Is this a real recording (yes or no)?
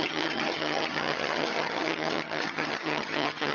no